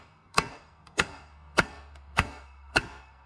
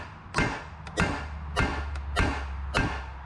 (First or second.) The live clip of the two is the second